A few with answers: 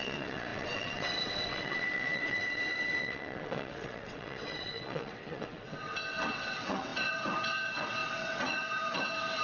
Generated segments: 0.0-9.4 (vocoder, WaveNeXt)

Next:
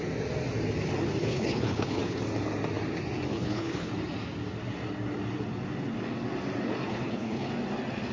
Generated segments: 1.2-2.2 (codec, HILCodec); 3.3-3.9; 6.9-7.5

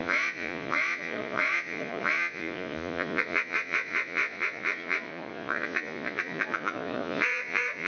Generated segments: 0.0-7.9 (vocoder, Vocos)

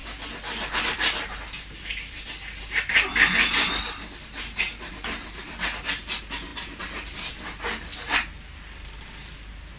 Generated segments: 0.0-6.5 (vocoder, BigVGAN v2)

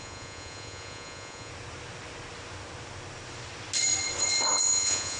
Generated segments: 0.0-1.5 (vocoder, Vocos); 4.6-5.2

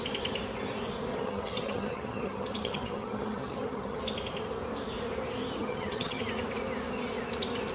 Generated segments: 1.1-4.0 (vocoder, HiFi-GAN); 5.6-6.2

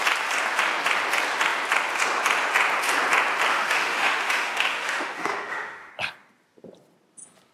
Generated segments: 3.5-5.9 (autoencoder, DAC-VAE)